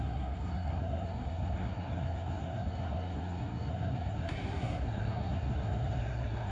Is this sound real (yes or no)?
no